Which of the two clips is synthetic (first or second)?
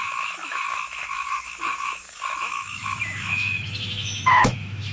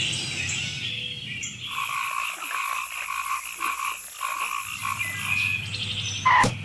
first